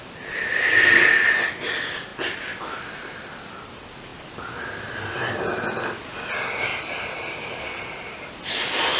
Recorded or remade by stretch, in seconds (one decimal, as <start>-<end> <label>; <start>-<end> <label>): 0.0-6.7 recorded; 6.7-8.3 remade; 8.3-9.0 recorded